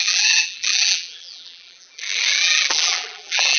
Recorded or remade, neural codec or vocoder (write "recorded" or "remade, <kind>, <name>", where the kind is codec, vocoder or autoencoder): remade, vocoder, BigVGAN v2